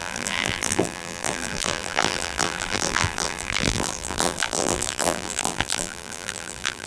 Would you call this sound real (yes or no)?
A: no